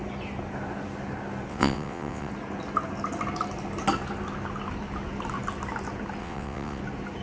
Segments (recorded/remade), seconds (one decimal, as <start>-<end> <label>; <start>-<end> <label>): 0.0-1.5 recorded; 1.5-2.3 remade; 2.3-6.2 recorded; 6.2-6.8 remade; 6.8-7.2 recorded